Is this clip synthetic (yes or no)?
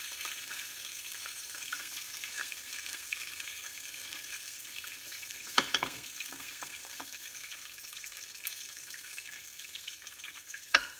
yes